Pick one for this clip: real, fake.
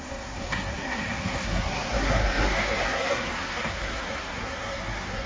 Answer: fake